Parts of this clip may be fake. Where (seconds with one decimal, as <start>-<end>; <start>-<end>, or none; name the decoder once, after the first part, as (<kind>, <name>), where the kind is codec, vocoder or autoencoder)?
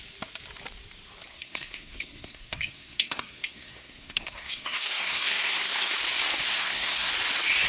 1.3-5.9 (codec, SNAC); 6.5-7.1